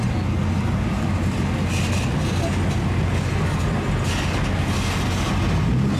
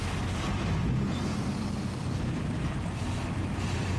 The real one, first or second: first